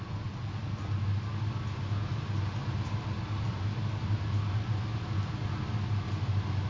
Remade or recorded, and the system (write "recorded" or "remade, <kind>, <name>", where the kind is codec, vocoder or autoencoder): recorded